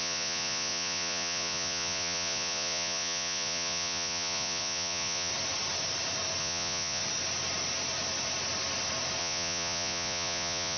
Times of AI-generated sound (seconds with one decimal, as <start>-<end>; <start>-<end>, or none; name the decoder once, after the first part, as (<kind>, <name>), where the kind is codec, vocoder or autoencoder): 0.0-5.3 (vocoder, Vocos); 6.4-7.0; 9.2-10.8